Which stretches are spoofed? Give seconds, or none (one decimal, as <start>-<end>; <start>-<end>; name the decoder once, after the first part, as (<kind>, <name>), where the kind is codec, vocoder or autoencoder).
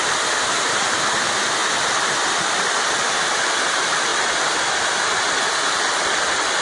none